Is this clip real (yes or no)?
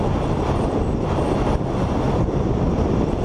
yes